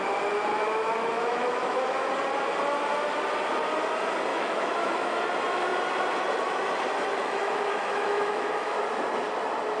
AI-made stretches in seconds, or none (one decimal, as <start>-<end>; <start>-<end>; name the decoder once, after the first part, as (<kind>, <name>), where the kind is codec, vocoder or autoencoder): 0.5-2.1 (autoencoder, DAC-VAE); 4.3-5.2; 7.1-8.8

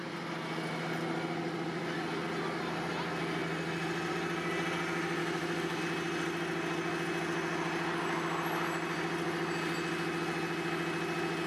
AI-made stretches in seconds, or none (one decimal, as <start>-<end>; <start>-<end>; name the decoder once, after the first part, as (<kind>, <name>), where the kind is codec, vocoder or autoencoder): 5.2-5.8 (autoencoder, DAC-VAE)

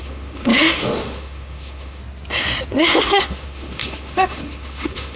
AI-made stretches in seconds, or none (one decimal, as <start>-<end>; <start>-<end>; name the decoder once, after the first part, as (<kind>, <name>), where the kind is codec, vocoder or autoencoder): 0.0-2.0 (autoencoder, DAC-VAE); 2.7-5.2